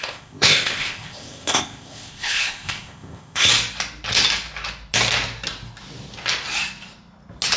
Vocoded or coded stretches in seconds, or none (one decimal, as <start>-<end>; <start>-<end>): 0.0-3.5